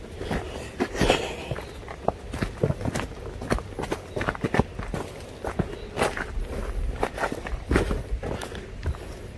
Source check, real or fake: real